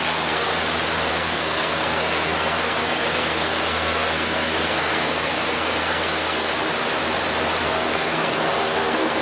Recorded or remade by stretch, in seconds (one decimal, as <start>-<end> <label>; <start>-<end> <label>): 0.0-0.5 remade; 0.5-1.1 recorded; 1.1-6.5 remade; 6.5-7.6 recorded; 7.6-9.2 remade